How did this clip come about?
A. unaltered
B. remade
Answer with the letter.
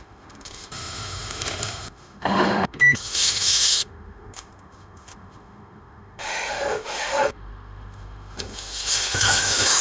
B